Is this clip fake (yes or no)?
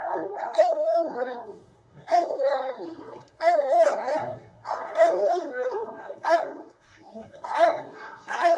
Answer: yes